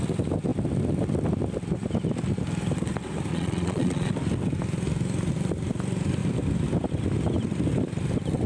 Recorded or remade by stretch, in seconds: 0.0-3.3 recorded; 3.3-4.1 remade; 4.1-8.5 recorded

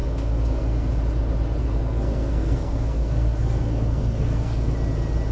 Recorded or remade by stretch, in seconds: 0.0-0.9 remade; 0.9-1.6 recorded; 1.6-4.7 remade; 4.7-5.3 recorded

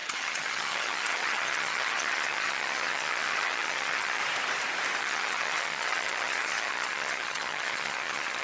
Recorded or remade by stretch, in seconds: 0.0-4.2 remade; 4.2-5.0 recorded; 5.0-8.4 remade

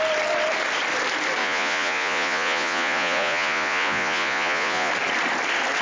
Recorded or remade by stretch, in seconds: 0.0-1.4 recorded; 1.4-4.9 remade; 4.9-5.8 recorded

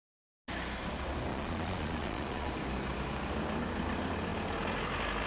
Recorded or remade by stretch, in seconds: 0.0-1.3 recorded; 1.3-2.5 remade; 2.5-5.3 recorded

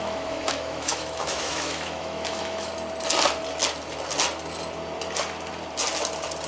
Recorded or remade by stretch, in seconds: 0.0-2.7 remade; 2.7-6.5 recorded

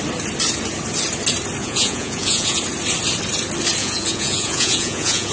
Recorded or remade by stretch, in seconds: 0.0-1.6 recorded; 1.6-2.6 remade; 2.6-3.8 recorded; 3.8-5.3 remade

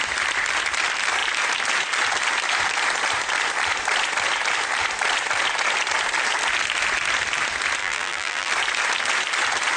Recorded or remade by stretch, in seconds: 0.0-7.8 recorded; 7.8-8.5 remade; 8.5-9.8 recorded